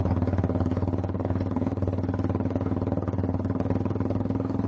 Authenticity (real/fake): fake